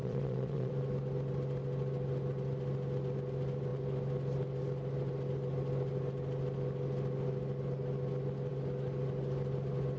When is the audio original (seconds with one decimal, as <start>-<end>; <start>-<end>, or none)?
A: 0.7-10.0